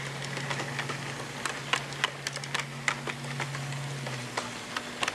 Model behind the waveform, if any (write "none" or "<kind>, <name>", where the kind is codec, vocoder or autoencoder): none